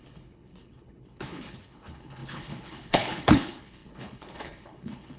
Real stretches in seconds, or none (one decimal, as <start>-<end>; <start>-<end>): none